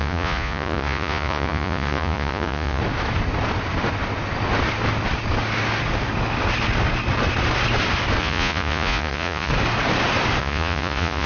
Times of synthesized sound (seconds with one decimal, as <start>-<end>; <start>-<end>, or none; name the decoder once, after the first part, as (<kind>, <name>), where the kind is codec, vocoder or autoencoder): 0.0-2.8 (vocoder, Vocos); 8.2-9.5; 10.4-11.3